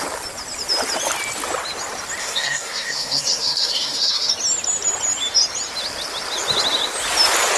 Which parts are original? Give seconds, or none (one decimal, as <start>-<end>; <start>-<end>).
0.0-2.2; 4.3-7.6